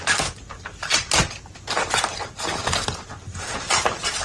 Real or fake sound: real